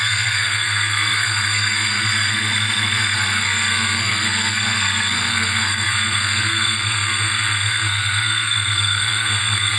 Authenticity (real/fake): fake